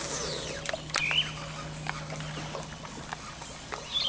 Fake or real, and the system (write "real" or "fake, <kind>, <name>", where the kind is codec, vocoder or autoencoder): real